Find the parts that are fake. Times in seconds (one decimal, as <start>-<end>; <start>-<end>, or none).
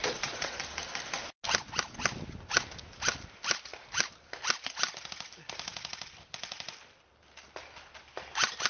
0.0-0.6